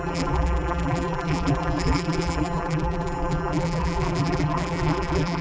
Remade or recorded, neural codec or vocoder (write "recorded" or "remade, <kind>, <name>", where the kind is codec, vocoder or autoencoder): remade, vocoder, BigVGAN v2